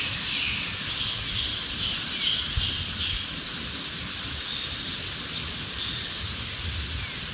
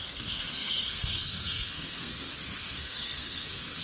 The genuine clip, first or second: first